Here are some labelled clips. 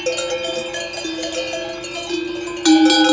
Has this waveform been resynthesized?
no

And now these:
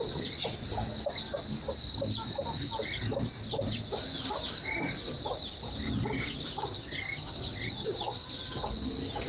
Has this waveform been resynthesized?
no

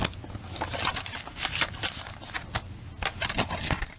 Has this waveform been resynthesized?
no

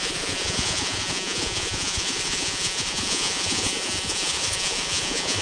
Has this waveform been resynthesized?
yes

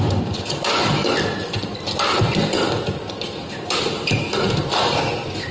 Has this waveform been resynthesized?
no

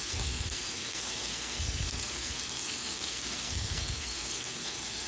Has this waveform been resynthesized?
yes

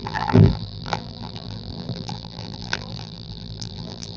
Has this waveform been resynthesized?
yes